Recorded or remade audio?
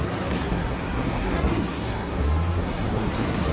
remade